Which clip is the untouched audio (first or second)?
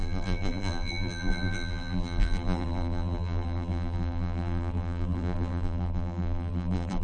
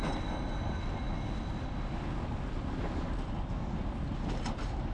second